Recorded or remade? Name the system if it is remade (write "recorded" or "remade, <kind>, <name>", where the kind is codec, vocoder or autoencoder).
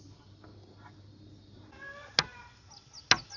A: recorded